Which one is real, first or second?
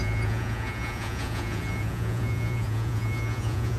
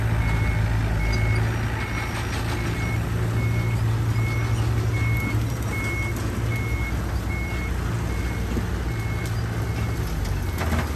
second